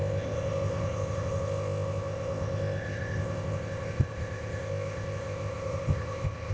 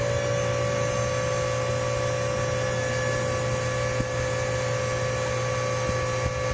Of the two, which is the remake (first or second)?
first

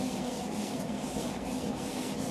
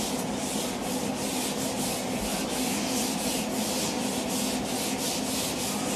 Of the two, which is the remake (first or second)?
first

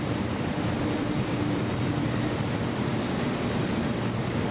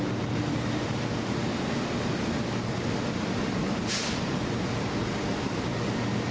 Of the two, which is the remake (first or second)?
first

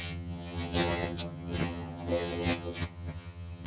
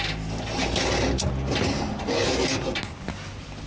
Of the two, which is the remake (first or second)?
first